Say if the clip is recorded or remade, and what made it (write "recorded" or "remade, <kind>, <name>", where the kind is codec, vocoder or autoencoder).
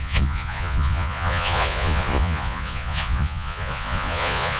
remade, vocoder, Vocos